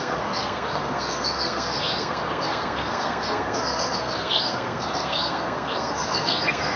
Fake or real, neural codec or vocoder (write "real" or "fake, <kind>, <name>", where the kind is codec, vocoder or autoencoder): fake, codec, SNAC